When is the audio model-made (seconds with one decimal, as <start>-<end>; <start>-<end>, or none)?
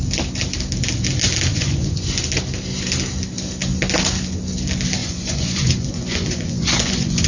1.5-2.1; 5.0-7.3